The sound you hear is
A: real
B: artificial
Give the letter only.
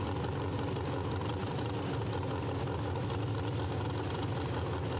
A